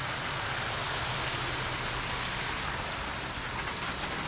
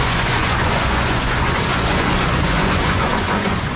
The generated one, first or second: second